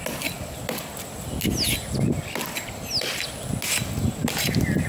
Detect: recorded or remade recorded